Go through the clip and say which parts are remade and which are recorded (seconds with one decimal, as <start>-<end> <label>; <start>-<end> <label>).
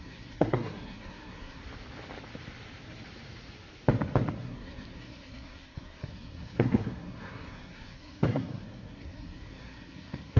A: 0.0-1.6 remade; 1.6-4.3 recorded; 4.3-10.4 remade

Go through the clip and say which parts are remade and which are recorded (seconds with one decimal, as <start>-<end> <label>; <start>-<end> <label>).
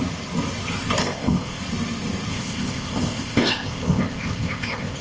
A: 0.0-1.0 recorded; 1.0-1.6 remade; 1.6-2.3 recorded; 2.3-5.0 remade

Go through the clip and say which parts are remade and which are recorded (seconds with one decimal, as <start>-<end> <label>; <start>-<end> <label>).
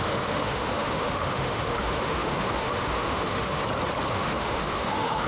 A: 0.0-3.6 remade; 3.6-4.1 recorded; 4.1-5.3 remade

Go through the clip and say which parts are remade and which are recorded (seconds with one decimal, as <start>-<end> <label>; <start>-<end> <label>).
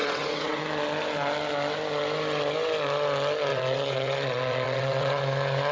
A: 0.0-0.6 remade; 0.6-3.5 recorded; 3.5-5.2 remade; 5.2-5.7 recorded